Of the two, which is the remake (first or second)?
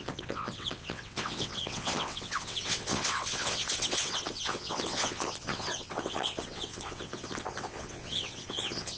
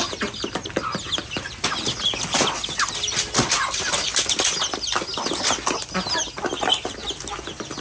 first